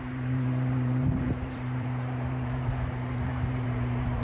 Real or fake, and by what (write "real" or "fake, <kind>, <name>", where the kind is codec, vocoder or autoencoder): fake, vocoder, BigVGAN v2